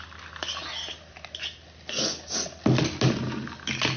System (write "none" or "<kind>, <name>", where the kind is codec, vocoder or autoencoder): none